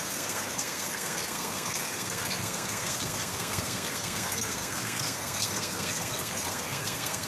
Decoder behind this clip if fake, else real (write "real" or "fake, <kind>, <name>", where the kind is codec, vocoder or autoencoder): fake, codec, SNAC